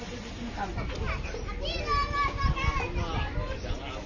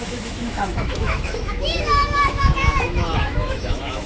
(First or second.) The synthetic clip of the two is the second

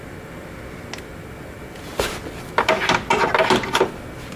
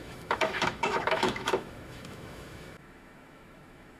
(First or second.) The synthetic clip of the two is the second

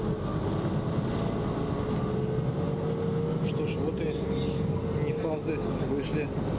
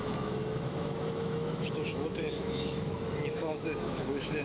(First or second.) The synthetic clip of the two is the second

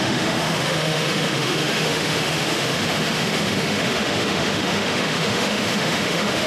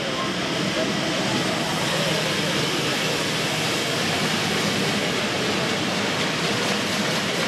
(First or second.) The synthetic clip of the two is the first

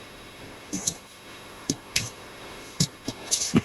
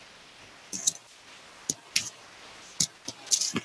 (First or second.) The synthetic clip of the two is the first